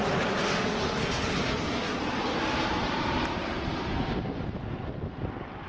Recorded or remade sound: recorded